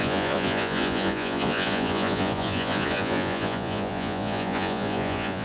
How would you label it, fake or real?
fake